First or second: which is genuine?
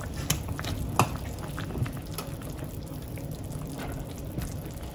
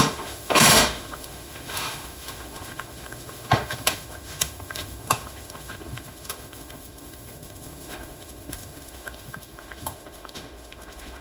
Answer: first